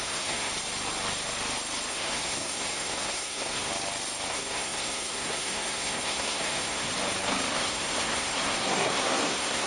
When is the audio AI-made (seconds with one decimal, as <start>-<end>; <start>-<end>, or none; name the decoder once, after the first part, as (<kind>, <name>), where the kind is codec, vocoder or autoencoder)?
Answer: 0.0-0.5 (codec, SNAC); 1.9-3.7; 4.3-6.9; 7.5-9.7